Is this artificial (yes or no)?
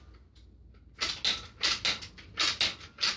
no